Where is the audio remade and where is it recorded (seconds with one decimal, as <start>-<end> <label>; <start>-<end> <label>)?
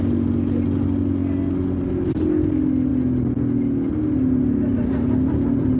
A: 0.0-5.8 recorded